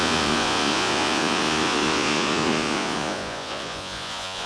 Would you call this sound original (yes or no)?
no